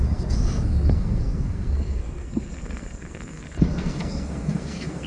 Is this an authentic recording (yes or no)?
no